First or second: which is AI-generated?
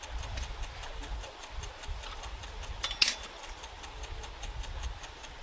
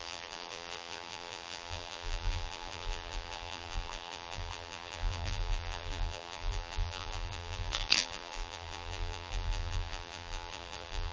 second